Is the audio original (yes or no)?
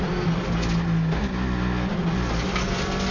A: yes